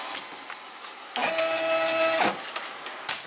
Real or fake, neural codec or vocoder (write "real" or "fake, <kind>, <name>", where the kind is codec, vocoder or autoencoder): real